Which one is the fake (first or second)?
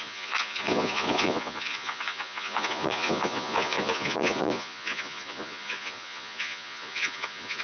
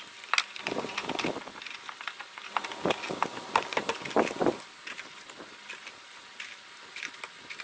first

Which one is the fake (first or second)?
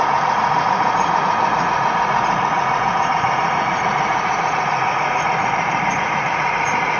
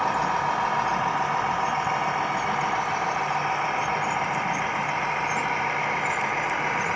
first